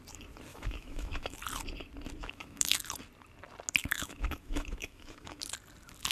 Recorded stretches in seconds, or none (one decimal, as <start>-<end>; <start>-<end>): 0.0-0.5; 1.4-2.2; 2.8-3.8; 5.4-6.1